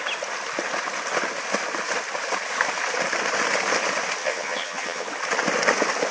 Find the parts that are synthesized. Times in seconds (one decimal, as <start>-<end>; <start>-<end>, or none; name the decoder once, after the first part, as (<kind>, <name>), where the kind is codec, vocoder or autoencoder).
4.2-5.1 (vocoder, HiFi-GAN)